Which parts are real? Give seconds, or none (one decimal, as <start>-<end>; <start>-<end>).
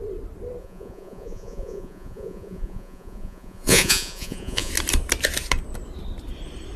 0.0-0.6; 4.7-6.8